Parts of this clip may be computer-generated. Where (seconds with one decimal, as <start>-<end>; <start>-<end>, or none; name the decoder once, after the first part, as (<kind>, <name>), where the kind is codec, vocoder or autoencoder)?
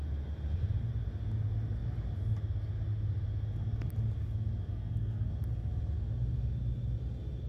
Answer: 4.7-5.3 (codec, SNAC)